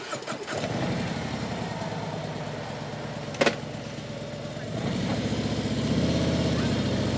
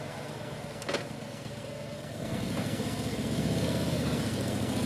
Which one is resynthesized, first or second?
second